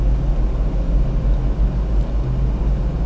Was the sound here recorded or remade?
recorded